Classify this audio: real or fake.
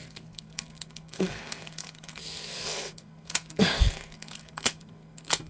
fake